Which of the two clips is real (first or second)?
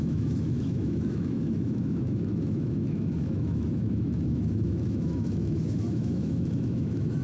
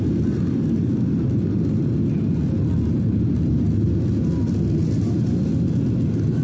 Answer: second